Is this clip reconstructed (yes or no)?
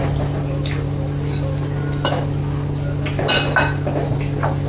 no